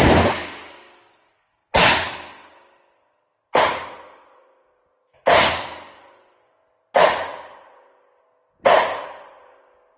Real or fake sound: real